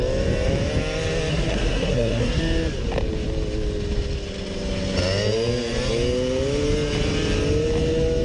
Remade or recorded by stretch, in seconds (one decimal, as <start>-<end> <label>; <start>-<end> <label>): 0.0-1.3 recorded; 1.3-2.4 remade; 2.4-8.2 recorded

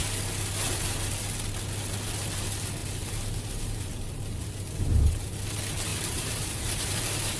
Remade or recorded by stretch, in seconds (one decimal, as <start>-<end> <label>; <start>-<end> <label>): 0.0-2.8 recorded; 2.8-5.4 remade; 5.4-5.9 recorded; 5.9-7.4 remade

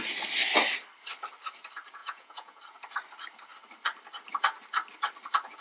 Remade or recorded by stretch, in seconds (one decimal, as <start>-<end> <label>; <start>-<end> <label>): 0.0-2.0 recorded; 2.0-2.6 remade; 2.6-5.6 recorded

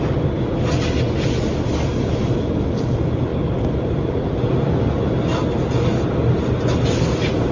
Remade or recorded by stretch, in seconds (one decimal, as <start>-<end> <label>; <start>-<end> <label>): 0.0-1.9 recorded; 1.9-2.6 remade; 2.6-7.5 recorded